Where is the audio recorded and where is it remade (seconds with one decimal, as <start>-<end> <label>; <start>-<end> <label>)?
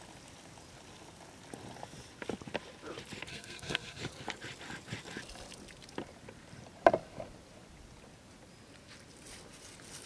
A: 0.0-3.3 recorded; 3.3-4.0 remade; 4.0-10.1 recorded